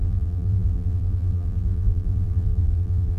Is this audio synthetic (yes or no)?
yes